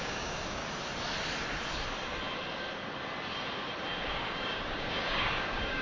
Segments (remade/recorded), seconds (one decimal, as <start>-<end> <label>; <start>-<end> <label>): 0.0-0.6 remade; 0.6-4.1 recorded; 4.1-5.8 remade